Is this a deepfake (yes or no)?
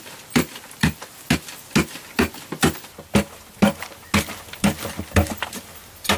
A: no